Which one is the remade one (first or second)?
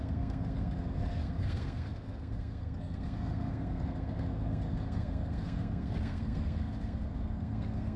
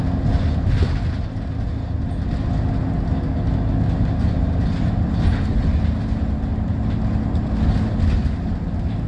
first